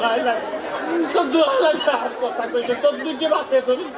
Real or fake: real